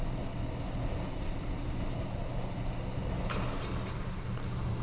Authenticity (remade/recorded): recorded